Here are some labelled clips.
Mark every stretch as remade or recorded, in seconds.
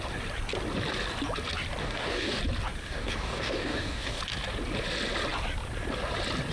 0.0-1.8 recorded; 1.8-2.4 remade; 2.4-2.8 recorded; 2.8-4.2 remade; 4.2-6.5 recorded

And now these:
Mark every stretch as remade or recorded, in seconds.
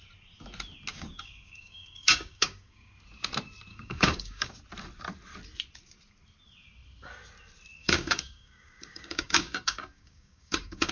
0.0-0.9 recorded; 0.9-2.9 remade; 2.9-3.7 recorded; 3.7-4.6 remade; 4.6-7.8 recorded; 7.8-10.9 remade